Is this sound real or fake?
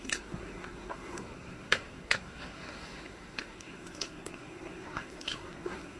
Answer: fake